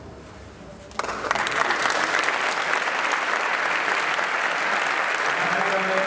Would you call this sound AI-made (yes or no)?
no